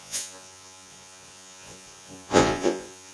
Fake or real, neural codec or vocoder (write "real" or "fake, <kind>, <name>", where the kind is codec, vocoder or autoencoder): fake, vocoder, Vocos